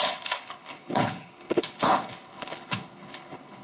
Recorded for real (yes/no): no